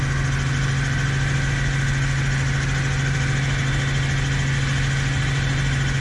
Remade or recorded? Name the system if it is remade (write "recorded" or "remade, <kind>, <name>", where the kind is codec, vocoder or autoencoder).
recorded